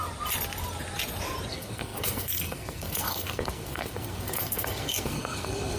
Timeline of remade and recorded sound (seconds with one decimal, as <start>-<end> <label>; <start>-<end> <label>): 0.0-1.5 recorded; 1.5-5.8 remade